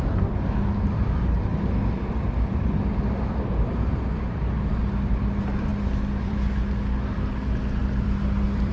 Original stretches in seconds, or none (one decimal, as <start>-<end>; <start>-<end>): 0.0-5.7; 6.5-7.8